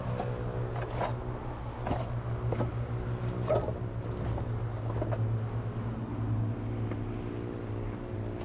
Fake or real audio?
real